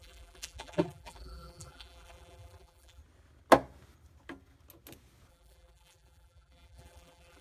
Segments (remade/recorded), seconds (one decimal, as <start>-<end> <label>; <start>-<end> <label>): 0.0-3.0 remade; 3.0-5.3 recorded; 5.3-7.4 remade